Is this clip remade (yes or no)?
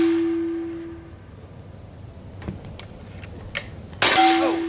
no